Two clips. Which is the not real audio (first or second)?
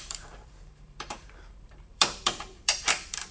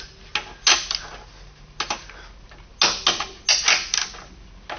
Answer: first